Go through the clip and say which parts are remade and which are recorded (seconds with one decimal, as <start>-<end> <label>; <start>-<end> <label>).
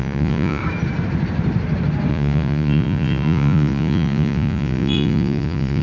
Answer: 0.0-0.6 remade; 0.6-2.1 recorded; 2.1-5.8 remade